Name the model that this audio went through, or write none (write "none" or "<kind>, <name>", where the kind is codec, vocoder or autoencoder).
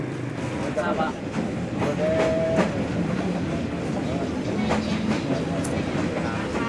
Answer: none